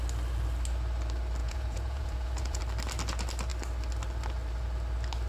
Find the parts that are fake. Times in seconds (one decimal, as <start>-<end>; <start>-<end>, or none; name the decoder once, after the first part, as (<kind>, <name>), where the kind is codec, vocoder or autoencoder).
1.4-2.6 (vocoder, Vocos)